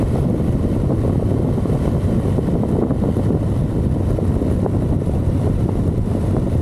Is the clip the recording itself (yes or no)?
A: yes